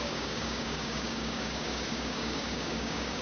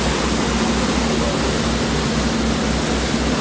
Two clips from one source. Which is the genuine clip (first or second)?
second